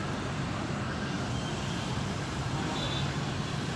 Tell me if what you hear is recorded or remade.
remade